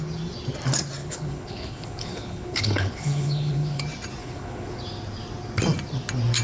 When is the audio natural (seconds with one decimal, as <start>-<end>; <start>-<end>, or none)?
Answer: 0.0-1.0; 3.8-4.2; 4.8-6.4